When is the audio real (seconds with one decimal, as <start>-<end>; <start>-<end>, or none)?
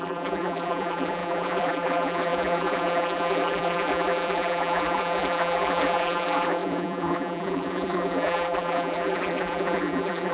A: none